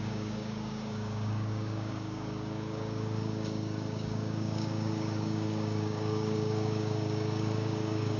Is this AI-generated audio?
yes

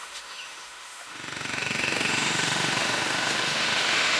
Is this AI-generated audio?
yes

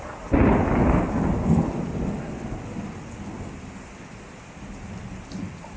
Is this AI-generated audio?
no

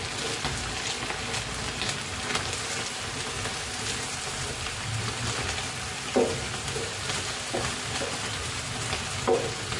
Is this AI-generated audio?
no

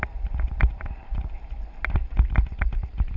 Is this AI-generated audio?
no